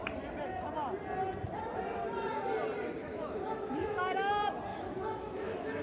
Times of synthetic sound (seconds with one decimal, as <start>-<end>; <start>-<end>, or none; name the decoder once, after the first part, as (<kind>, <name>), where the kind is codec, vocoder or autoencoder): 3.0-4.3 (autoencoder, DAC-VAE); 4.7-5.8